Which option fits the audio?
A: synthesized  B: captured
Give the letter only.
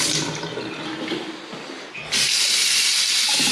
B